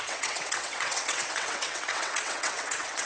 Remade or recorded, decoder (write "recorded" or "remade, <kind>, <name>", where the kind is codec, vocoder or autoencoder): remade, vocoder, WaveNeXt